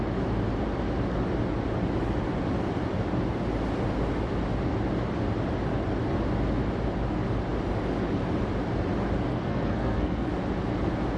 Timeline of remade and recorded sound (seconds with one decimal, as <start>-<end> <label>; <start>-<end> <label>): 0.0-9.3 recorded; 9.3-10.3 remade; 10.3-11.2 recorded

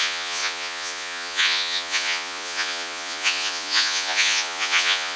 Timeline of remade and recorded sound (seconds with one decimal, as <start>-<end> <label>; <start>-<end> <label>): 0.0-5.2 remade

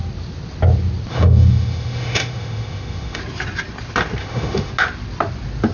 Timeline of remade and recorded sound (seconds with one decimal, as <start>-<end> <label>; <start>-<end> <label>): 0.0-1.1 recorded; 1.1-3.2 remade; 3.2-4.2 recorded; 4.2-4.7 remade; 4.7-5.7 recorded